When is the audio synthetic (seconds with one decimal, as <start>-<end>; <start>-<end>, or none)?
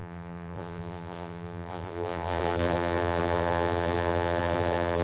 0.0-5.0